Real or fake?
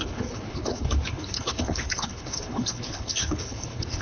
fake